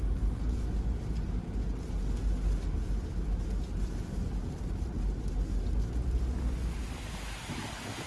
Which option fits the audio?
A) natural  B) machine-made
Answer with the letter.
A